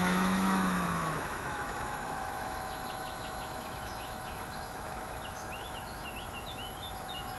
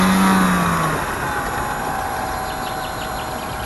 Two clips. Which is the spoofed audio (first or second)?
first